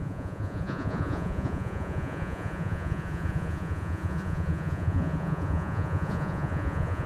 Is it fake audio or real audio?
fake